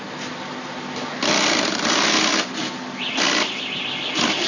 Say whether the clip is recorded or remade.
recorded